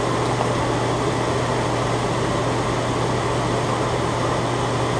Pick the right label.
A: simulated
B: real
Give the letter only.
B